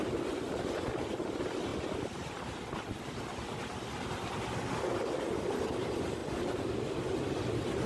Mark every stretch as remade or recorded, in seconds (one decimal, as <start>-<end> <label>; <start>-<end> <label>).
0.0-7.9 recorded